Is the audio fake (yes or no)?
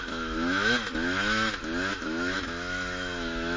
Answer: yes